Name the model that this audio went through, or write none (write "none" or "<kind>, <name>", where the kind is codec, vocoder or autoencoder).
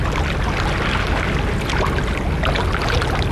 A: none